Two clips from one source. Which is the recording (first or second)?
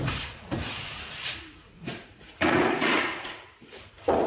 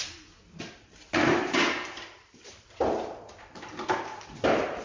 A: second